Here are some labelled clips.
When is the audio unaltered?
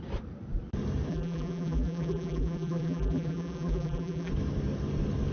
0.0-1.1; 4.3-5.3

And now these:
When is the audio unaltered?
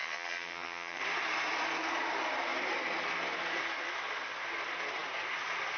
1.0-5.8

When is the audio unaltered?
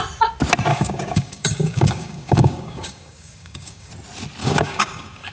0.0-0.7; 3.9-4.4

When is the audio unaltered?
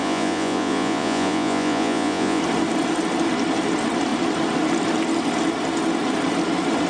2.4-6.9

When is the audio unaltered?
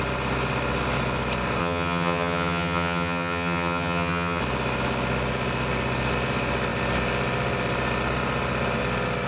0.0-1.6; 4.4-9.3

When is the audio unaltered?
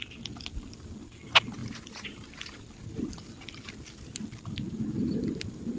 0.0-1.6; 2.6-5.8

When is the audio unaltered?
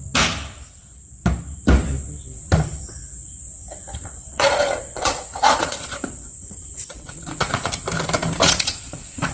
0.0-4.0; 7.7-8.4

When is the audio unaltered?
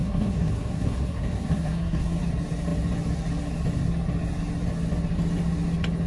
2.2-6.1